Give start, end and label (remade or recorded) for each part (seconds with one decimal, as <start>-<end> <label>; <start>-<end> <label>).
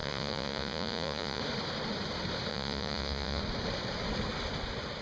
0.0-1.4 remade; 1.4-2.5 recorded; 2.5-3.4 remade; 3.4-5.0 recorded